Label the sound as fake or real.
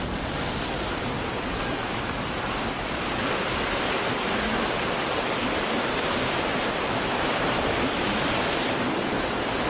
real